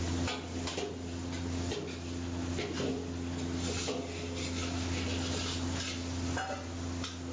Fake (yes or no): no